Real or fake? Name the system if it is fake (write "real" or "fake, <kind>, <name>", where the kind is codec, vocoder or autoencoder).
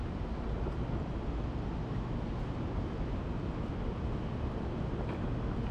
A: real